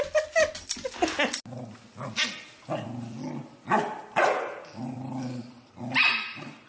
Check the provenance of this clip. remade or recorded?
recorded